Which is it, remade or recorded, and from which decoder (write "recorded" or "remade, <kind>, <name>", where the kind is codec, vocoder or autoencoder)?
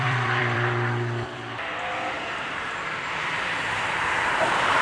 remade, vocoder, BigVGAN v2